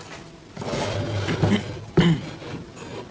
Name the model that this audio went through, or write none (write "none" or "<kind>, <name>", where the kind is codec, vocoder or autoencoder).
none